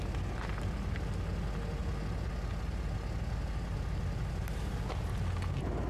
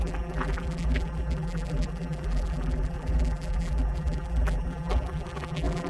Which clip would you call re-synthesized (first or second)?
second